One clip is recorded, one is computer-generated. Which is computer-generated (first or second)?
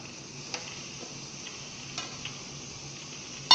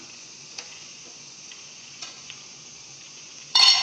second